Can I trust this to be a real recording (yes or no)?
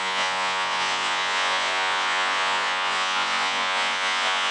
no